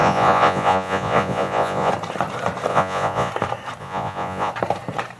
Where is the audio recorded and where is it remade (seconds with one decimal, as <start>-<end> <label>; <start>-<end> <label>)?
0.0-1.9 remade; 1.9-2.7 recorded; 2.7-3.3 remade; 3.3-3.8 recorded; 3.8-4.5 remade; 4.5-5.2 recorded